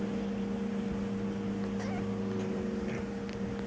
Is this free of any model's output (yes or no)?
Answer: yes